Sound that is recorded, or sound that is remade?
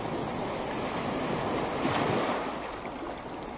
recorded